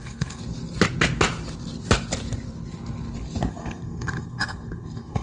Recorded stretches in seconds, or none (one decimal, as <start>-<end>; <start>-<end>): 0.4-3.5